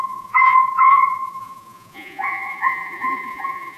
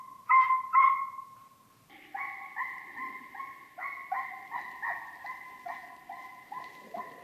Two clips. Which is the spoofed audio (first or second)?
first